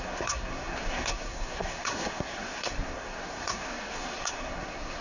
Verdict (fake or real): fake